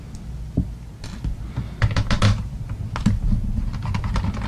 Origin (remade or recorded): recorded